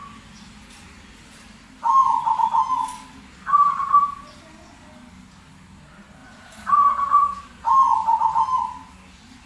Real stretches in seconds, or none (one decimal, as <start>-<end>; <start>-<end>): 0.0-6.2; 7.4-9.5